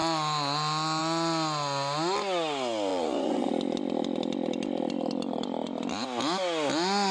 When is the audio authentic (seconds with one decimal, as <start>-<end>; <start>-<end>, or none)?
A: 0.0-2.9; 3.5-7.1